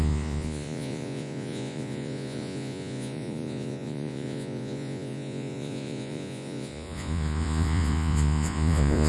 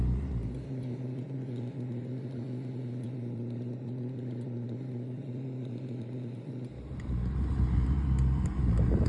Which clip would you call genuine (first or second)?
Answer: second